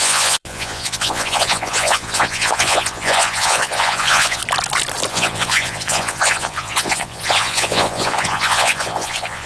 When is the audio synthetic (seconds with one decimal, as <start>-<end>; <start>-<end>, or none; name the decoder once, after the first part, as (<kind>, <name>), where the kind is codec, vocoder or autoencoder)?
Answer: 0.0-4.4 (vocoder, Vocos); 5.1-9.5

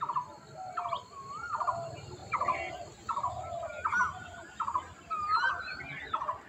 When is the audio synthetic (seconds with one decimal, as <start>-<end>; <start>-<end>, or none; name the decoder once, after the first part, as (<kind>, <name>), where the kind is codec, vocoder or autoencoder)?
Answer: none

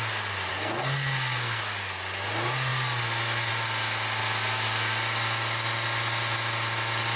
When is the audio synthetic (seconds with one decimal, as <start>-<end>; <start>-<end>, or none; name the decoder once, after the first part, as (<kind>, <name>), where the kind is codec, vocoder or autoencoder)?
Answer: 0.5-1.6 (codec, SNAC)

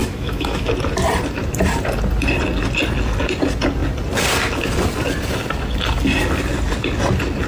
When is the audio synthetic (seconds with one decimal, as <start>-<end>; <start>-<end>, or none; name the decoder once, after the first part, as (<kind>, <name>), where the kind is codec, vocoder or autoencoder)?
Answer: 0.0-0.7 (autoencoder, DAC-VAE)